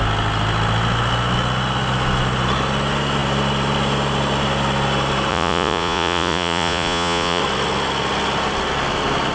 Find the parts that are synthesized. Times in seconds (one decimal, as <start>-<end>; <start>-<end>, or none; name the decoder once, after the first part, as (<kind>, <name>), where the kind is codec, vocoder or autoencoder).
5.3-7.4 (vocoder, Vocos)